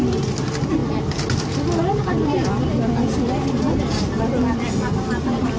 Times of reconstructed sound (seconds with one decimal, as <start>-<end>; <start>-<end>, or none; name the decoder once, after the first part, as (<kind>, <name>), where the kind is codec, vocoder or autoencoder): none